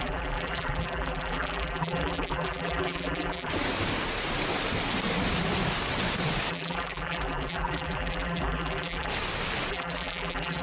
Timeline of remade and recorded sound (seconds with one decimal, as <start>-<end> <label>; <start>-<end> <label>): 0.0-3.5 remade; 3.5-6.5 recorded; 6.5-9.1 remade; 9.1-9.7 recorded; 9.7-10.6 remade